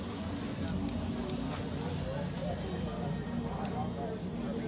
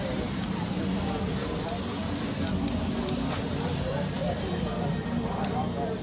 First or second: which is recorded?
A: first